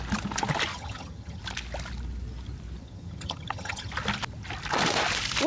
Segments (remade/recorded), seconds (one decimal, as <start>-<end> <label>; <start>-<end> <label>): 0.0-0.7 recorded; 0.7-1.4 remade; 1.4-2.8 recorded; 2.8-3.9 remade; 3.9-5.5 recorded